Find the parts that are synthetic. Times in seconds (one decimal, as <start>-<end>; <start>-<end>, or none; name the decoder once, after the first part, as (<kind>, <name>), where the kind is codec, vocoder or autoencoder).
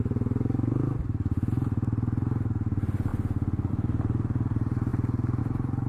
0.0-1.0 (vocoder, BigVGAN v2); 1.5-3.1; 3.7-4.9; 5.4-5.9